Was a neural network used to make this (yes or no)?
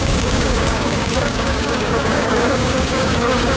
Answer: yes